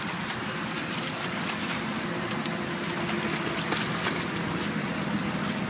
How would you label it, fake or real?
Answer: real